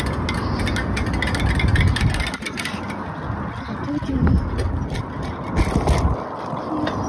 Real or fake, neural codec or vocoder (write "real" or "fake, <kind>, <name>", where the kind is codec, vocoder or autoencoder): real